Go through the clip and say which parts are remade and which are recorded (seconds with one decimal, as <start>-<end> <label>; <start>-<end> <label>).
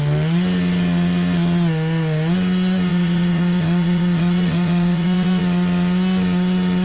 0.0-2.9 recorded; 2.9-5.4 remade; 5.4-6.8 recorded